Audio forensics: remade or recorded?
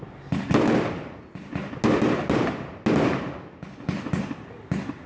recorded